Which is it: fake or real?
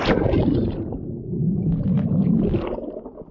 real